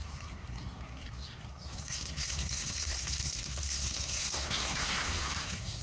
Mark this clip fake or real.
fake